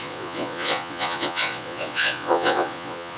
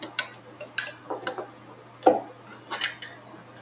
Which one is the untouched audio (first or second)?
second